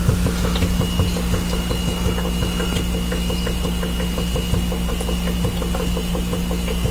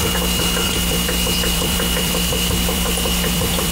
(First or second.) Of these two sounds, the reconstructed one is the second